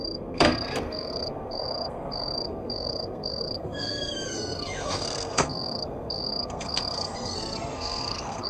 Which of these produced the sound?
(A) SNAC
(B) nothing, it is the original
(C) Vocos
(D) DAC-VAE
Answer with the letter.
A